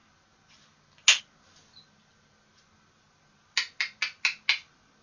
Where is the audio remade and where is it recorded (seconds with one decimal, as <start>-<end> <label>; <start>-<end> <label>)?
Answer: 0.0-5.0 recorded